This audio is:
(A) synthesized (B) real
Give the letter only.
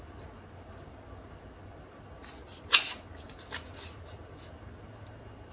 B